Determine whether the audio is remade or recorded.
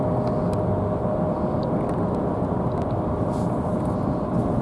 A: recorded